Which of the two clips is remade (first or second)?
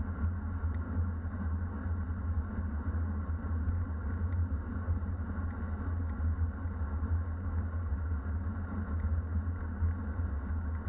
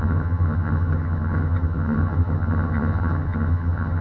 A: second